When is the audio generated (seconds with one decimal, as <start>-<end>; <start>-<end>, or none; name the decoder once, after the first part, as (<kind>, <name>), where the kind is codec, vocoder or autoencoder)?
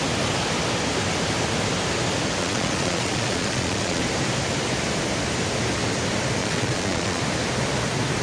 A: 2.4-4.0 (vocoder, Vocos); 6.4-7.2